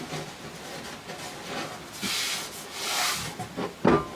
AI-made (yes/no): no